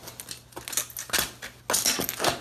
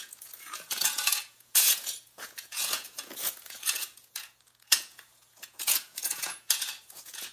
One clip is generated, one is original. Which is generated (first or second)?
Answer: second